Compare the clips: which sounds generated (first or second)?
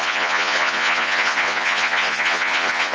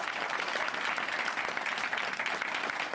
first